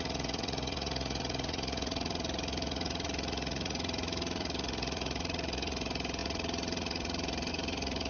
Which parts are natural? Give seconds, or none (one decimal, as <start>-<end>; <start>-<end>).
none